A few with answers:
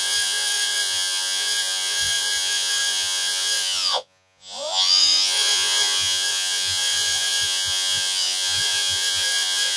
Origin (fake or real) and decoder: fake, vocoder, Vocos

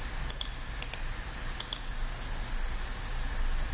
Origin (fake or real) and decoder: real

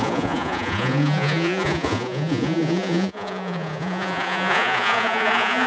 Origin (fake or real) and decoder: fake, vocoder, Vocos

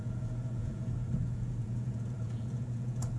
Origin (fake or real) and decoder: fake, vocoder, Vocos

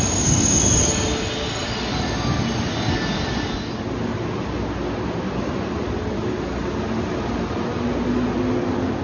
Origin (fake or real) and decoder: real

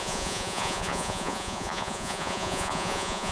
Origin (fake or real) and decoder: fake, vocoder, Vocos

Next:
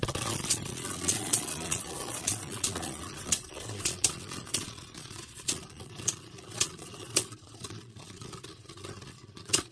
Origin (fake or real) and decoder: fake, vocoder, Vocos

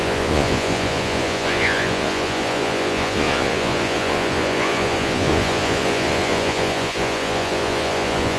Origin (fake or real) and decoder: fake, vocoder, Vocos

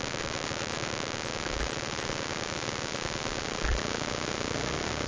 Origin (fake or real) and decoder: real